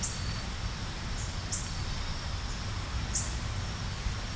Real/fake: real